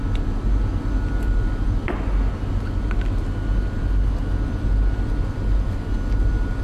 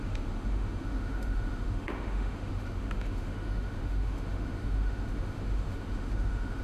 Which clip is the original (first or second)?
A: first